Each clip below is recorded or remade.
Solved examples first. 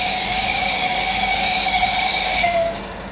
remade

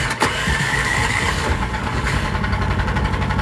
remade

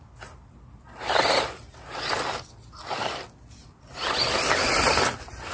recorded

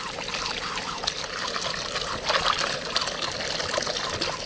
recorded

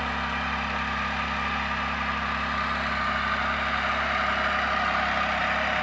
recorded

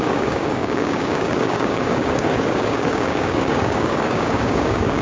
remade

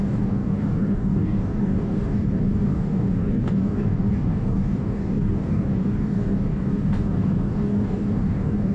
remade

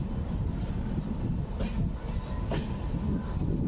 recorded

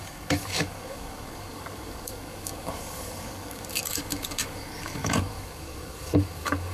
remade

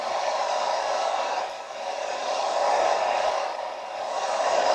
remade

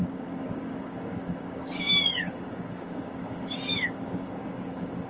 remade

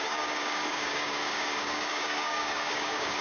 remade